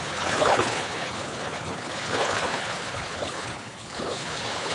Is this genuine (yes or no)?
no